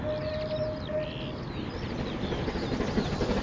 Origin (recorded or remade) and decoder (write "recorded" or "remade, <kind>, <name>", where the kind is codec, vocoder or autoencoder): recorded